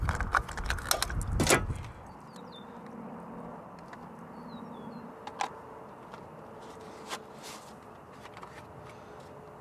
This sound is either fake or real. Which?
real